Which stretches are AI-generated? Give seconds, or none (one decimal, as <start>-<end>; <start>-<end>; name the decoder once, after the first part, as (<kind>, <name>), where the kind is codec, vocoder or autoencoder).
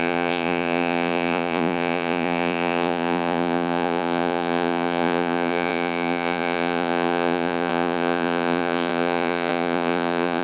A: 0.0-10.4 (vocoder, Vocos)